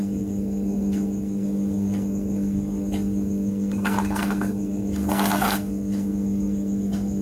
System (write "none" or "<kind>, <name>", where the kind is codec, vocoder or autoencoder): codec, SNAC